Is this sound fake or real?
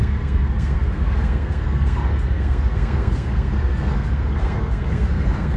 fake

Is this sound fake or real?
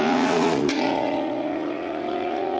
fake